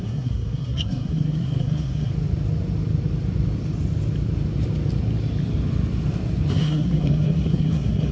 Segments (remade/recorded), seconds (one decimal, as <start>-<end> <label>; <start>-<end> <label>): 0.0-2.1 remade; 2.1-6.5 recorded; 6.5-8.1 remade